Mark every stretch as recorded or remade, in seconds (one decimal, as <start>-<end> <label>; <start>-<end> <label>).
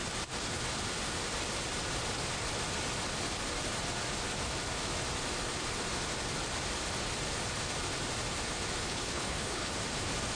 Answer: 0.0-8.8 recorded; 8.8-9.7 remade; 9.7-10.4 recorded